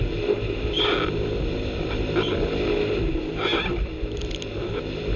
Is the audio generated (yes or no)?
no